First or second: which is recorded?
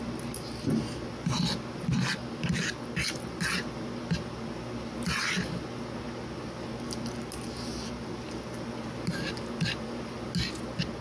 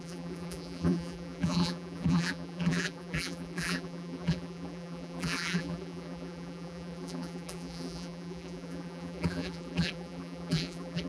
first